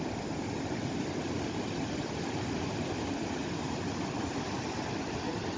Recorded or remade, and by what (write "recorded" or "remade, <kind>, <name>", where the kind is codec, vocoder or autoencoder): recorded